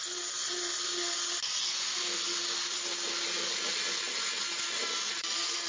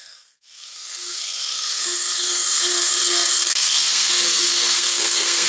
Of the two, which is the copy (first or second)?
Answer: second